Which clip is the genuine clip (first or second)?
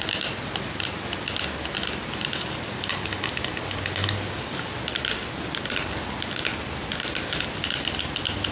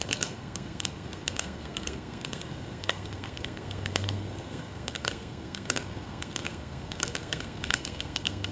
first